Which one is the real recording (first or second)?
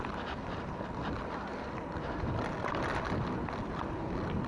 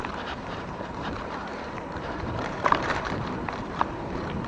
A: first